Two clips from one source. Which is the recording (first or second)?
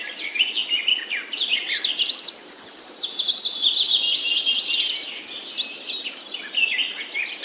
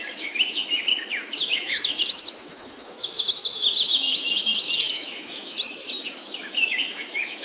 first